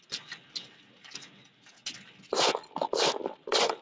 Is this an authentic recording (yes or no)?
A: yes